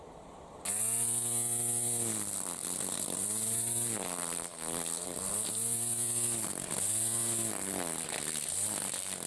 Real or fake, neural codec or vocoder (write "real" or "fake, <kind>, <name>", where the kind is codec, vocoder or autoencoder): real